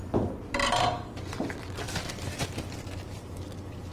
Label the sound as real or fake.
real